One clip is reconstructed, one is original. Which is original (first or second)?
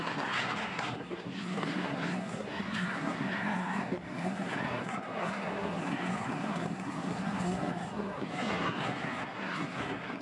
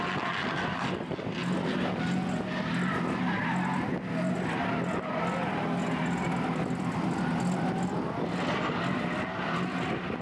second